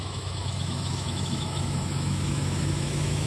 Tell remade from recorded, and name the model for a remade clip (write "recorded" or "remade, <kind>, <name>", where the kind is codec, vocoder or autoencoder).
remade, autoencoder, DAC-VAE